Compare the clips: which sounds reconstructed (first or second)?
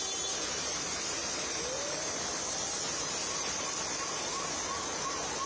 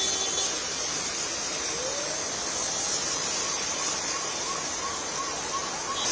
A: first